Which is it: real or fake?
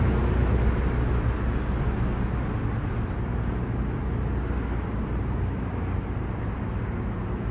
real